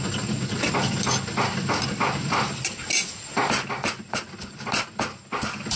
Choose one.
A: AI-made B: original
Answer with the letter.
B